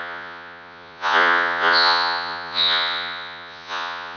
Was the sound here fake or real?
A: fake